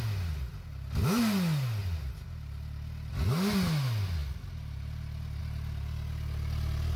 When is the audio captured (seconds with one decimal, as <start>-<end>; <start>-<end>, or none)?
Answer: 0.0-7.0